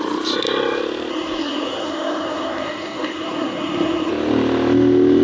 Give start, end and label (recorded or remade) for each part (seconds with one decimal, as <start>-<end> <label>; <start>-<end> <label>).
0.0-1.1 recorded; 1.1-4.1 remade; 4.1-5.2 recorded